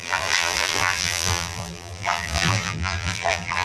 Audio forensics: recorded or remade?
remade